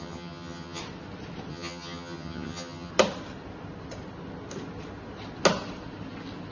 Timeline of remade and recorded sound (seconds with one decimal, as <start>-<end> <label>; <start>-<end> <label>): 0.0-0.8 remade; 0.8-1.5 recorded; 1.5-2.9 remade; 2.9-6.5 recorded

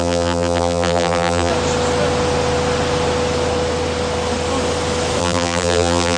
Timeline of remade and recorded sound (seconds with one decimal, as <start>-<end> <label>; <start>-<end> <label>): 0.0-1.5 remade; 1.5-5.2 recorded; 5.2-6.2 remade